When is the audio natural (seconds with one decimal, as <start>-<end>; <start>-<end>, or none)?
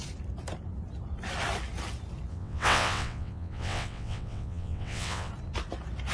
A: 0.0-2.3; 5.3-6.1